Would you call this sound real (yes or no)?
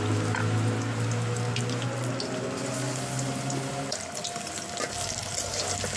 yes